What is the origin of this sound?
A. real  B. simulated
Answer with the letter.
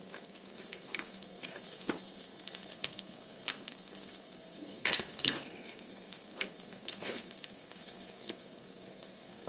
B